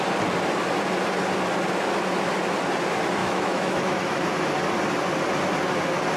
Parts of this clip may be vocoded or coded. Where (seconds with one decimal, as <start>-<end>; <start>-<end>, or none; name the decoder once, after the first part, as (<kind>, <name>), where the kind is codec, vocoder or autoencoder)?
3.2-4.2 (autoencoder, DAC-VAE)